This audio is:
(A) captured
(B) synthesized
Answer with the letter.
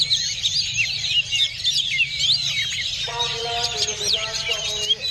A